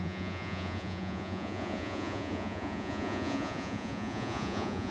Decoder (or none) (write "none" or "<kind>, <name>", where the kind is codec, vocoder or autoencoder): vocoder, Vocos